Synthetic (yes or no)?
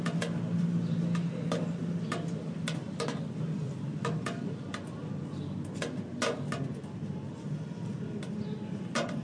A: no